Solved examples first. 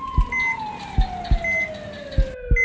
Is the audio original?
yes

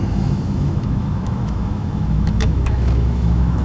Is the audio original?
no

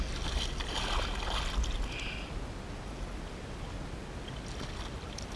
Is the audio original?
yes